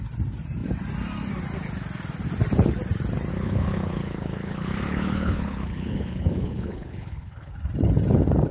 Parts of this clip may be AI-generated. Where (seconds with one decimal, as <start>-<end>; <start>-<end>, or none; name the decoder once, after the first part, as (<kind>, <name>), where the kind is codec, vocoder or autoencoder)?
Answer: 3.3-7.5 (codec, HILCodec)